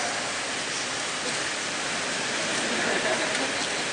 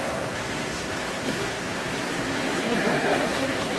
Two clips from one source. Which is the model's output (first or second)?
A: second